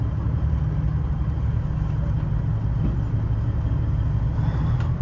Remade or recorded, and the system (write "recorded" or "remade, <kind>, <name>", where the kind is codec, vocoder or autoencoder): recorded